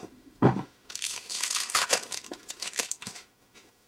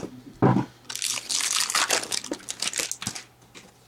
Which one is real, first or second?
second